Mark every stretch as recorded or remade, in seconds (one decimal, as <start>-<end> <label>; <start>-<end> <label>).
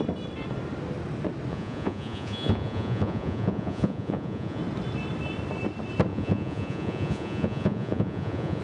0.0-1.5 recorded; 1.5-4.6 remade; 4.6-6.1 recorded; 6.1-8.6 remade